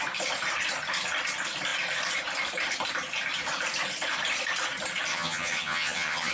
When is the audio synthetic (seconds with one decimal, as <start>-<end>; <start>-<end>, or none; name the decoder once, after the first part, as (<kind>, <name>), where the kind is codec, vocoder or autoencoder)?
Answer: 5.1-6.3 (vocoder, HiFi-GAN)